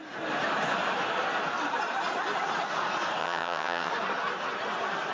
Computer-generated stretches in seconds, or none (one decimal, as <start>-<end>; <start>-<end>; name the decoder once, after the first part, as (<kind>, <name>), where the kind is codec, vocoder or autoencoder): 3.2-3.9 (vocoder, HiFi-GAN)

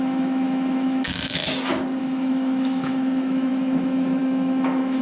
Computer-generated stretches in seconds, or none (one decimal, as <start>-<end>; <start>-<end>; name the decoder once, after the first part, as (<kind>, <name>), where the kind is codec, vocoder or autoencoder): 0.0-1.4 (autoencoder, DAC-VAE); 2.0-5.0

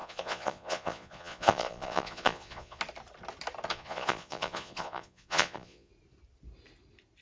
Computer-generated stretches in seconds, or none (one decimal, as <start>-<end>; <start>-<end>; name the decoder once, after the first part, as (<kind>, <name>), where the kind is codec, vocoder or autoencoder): 0.0-2.8 (vocoder, Vocos); 3.7-5.9

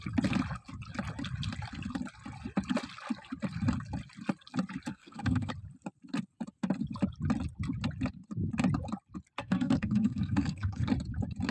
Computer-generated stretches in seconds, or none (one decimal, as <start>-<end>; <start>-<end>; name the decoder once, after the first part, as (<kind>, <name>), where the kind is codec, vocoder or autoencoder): 4.9-5.5 (codec, SNAC); 9.4-10.9

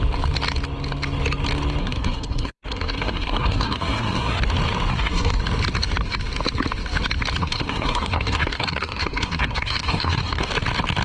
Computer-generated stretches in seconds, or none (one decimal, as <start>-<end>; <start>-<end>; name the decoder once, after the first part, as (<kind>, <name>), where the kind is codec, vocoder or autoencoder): 1.8-4.4 (codec, SNAC); 4.9-5.4; 7.4-10.5

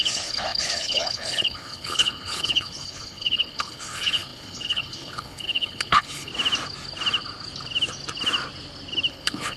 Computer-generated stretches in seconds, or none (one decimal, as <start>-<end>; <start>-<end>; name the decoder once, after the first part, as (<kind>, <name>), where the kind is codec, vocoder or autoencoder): 0.0-6.3 (codec, HILCodec); 9.1-9.6

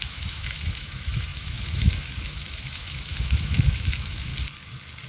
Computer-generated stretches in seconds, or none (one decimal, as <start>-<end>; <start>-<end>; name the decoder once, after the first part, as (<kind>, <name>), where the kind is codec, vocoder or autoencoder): 0.0-4.3 (autoencoder, DAC-VAE)